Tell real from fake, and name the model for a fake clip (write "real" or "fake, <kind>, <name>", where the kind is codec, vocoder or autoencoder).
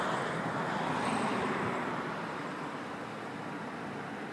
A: real